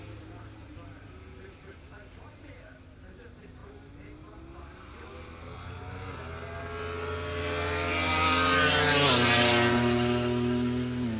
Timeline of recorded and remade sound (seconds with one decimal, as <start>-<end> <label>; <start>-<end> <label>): 0.0-11.2 recorded